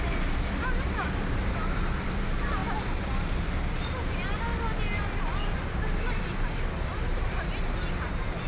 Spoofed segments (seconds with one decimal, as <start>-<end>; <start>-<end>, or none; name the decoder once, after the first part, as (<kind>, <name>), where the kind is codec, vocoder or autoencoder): none